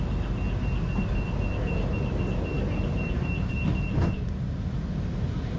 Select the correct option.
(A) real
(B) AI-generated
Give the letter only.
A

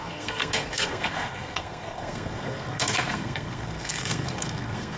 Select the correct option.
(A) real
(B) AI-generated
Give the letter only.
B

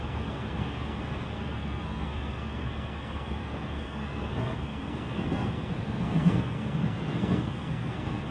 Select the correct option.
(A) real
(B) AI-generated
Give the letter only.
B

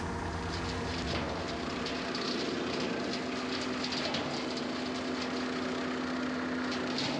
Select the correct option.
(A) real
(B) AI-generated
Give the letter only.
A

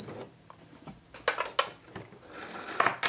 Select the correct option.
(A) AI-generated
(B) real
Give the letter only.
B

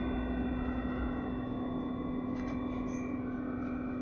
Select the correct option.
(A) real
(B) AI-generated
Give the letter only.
A